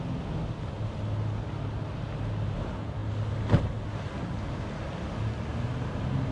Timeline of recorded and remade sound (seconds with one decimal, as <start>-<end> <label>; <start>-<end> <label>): 0.0-6.3 recorded